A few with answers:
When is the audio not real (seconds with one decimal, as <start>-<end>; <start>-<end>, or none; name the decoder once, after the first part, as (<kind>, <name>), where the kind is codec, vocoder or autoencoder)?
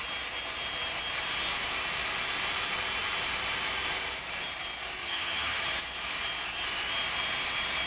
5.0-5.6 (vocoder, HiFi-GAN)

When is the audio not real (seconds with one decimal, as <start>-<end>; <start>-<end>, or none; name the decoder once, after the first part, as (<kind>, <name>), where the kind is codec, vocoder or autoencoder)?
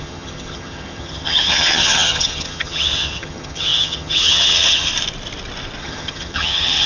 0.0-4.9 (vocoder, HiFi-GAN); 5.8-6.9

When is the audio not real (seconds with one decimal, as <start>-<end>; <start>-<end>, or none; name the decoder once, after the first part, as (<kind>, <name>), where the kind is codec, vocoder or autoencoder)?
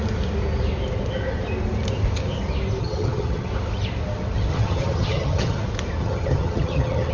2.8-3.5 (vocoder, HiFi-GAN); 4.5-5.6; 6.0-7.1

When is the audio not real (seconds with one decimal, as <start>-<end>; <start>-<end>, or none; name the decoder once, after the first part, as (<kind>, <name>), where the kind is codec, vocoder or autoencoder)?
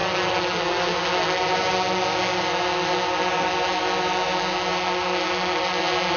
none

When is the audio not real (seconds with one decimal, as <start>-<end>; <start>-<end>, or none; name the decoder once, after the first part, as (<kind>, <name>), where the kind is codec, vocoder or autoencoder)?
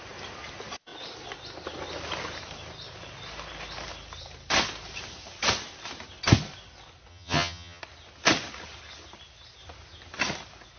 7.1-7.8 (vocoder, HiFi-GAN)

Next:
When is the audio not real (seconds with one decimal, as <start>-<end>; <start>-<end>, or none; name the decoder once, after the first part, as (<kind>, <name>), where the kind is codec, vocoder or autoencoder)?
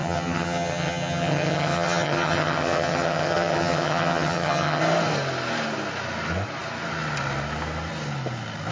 0.0-4.8 (vocoder, HiFi-GAN)